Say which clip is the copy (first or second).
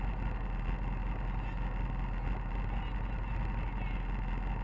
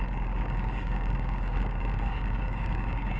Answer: second